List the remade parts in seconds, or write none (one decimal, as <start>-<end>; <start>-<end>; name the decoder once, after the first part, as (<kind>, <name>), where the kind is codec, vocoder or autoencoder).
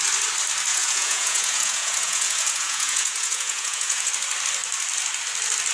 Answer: 0.7-4.1 (vocoder, Vocos)